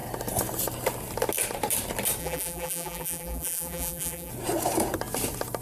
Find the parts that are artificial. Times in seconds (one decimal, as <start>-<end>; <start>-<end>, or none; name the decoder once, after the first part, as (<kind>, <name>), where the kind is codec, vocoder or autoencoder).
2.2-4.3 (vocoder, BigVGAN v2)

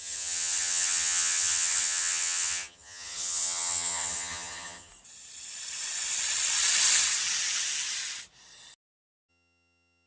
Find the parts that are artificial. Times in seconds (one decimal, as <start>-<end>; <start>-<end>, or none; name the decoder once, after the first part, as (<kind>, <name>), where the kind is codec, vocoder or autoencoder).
0.0-4.9 (vocoder, HiFi-GAN); 9.3-10.1

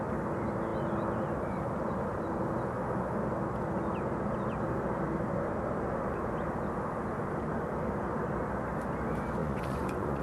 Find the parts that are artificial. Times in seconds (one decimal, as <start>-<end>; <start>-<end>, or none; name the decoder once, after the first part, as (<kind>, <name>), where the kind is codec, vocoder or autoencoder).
9.4-10.2 (vocoder, Vocos)

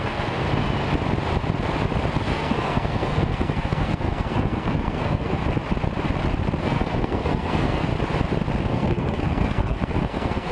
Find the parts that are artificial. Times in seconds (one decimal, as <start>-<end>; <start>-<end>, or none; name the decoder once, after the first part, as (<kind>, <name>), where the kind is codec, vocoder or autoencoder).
0.0-0.5 (codec, SNAC); 2.2-5.4; 6.6-7.9; 8.7-10.5

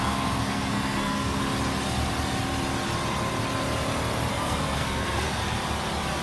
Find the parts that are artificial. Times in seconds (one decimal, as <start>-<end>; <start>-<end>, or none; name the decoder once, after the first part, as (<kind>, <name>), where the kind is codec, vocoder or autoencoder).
0.0-1.4 (codec, SNAC); 4.3-5.4

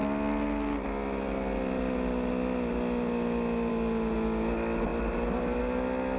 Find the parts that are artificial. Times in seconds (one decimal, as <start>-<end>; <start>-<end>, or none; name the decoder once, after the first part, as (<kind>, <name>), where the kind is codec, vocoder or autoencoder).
none

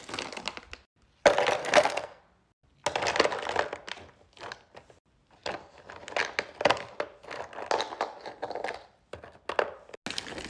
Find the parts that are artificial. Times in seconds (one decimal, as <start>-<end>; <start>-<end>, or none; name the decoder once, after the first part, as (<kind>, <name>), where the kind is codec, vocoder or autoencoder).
1.6-2.2 (codec, SNAC)

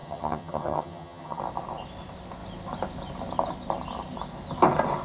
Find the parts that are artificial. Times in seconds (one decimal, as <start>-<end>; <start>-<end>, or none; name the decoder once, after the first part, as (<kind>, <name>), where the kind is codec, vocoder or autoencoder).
0.0-1.4 (vocoder, HiFi-GAN)